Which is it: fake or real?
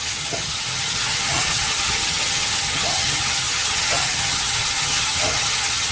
fake